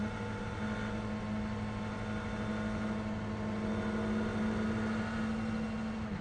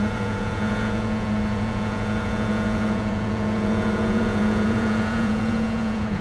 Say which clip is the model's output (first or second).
second